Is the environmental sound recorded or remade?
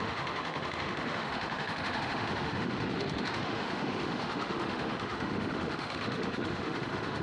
remade